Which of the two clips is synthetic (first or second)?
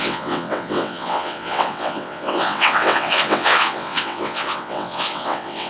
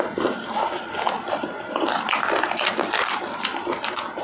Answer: first